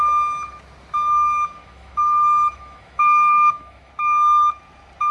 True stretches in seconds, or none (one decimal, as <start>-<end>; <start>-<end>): 0.0-1.6; 3.9-5.1